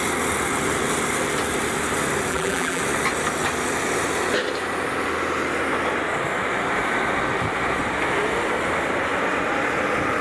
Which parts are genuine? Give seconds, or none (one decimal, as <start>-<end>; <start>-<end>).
0.0-2.3; 2.8-10.2